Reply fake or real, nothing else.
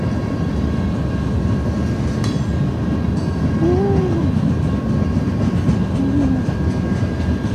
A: real